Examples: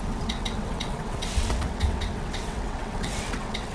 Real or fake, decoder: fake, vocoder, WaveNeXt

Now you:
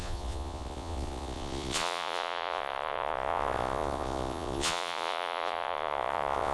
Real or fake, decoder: fake, vocoder, Vocos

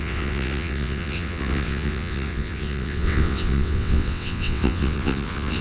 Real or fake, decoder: fake, vocoder, WaveNeXt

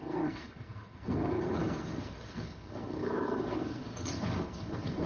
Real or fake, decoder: fake, codec, SNAC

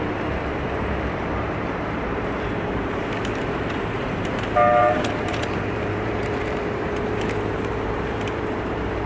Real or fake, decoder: fake, vocoder, BigVGAN v2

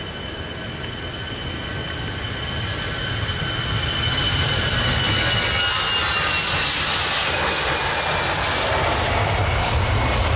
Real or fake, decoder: real